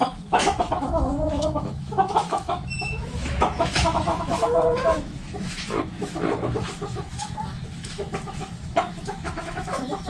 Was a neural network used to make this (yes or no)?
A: yes